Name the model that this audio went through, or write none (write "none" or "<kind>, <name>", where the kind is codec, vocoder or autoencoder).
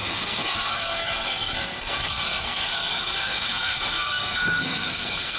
codec, SNAC